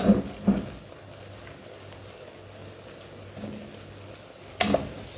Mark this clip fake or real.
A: real